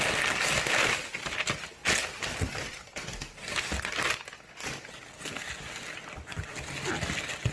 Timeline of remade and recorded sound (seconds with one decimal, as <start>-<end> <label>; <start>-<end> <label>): 0.0-1.8 recorded; 1.8-6.3 remade; 6.3-7.5 recorded